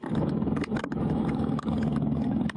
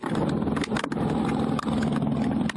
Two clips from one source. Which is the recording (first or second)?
second